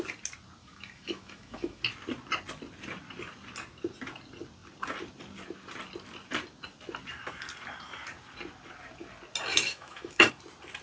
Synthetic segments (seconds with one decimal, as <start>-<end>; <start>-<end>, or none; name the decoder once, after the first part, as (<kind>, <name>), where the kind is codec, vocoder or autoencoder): 0.6-1.8 (autoencoder, DAC-VAE); 9.5-10.3